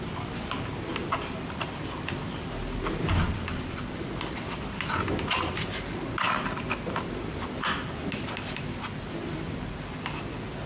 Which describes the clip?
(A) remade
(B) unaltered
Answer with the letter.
B